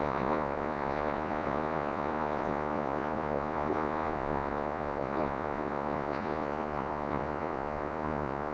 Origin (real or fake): fake